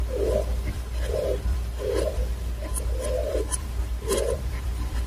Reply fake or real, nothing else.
fake